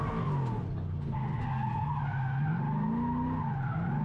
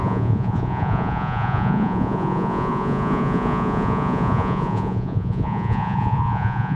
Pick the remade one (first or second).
second